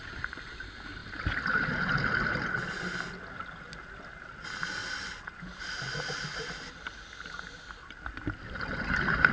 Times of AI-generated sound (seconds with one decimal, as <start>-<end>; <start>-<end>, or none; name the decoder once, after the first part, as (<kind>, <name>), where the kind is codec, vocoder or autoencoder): 4.8-5.6 (vocoder, BigVGAN v2)